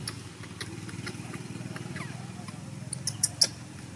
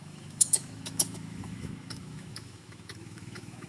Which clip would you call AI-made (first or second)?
second